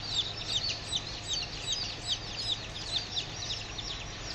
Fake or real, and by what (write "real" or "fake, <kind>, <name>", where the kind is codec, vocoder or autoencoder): real